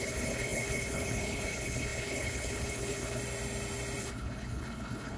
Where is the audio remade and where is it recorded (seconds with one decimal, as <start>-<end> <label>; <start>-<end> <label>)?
0.0-3.2 remade; 3.2-4.0 recorded; 4.0-5.2 remade